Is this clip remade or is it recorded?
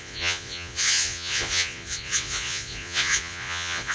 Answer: remade